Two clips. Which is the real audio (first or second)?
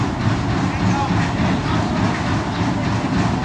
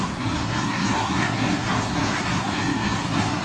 first